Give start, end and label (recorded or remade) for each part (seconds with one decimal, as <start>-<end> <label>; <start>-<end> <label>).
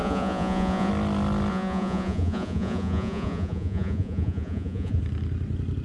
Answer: 0.0-0.9 remade; 0.9-1.5 recorded; 1.5-5.0 remade; 5.0-5.8 recorded